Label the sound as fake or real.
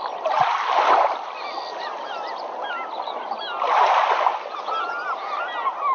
real